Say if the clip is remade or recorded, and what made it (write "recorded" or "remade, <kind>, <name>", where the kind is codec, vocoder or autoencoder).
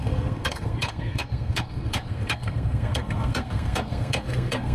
remade, codec, SNAC